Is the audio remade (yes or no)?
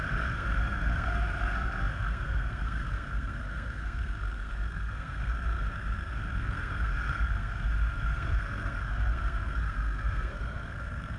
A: yes